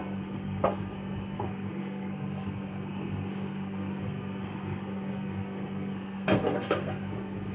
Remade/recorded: remade